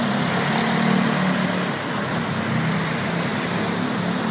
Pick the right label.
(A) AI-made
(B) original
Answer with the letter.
B